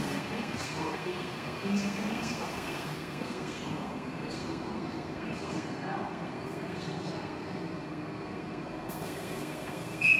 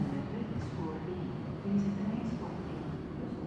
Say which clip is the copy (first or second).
first